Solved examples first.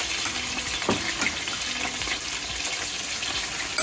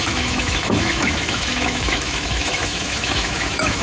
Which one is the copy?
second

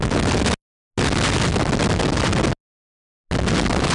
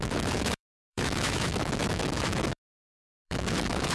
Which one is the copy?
second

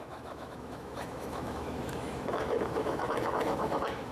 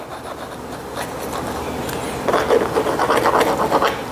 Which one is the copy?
first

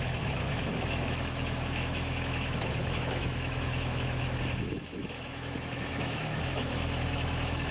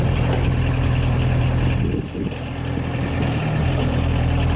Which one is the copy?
first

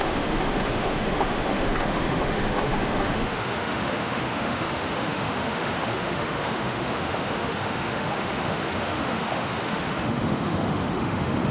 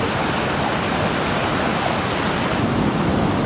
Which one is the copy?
first